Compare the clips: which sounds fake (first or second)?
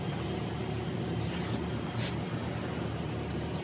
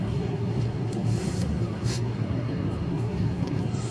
second